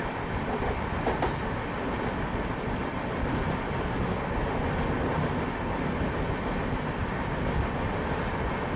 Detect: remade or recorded recorded